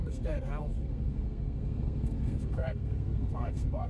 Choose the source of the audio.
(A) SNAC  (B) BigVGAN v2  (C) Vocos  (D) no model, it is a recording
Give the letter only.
A